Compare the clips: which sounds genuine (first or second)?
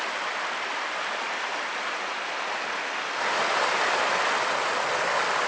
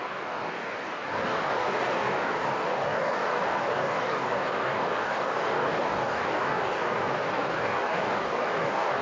first